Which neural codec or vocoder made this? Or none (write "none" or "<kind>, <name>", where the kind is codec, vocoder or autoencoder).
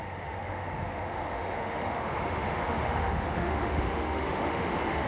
autoencoder, DAC-VAE